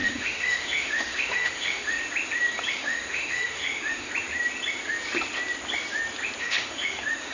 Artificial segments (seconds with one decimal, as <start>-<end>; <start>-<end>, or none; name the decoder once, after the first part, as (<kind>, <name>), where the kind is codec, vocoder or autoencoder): 0.0-2.0 (autoencoder, DAC-VAE); 2.7-4.1; 6.4-7.3